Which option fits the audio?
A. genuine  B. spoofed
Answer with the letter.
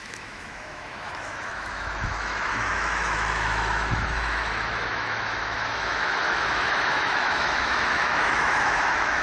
B